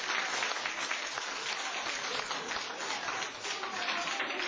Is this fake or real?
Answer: real